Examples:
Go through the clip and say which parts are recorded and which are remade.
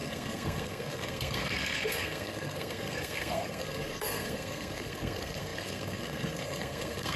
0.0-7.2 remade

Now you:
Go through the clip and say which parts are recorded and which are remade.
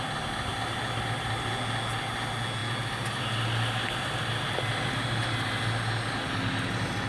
0.0-7.1 recorded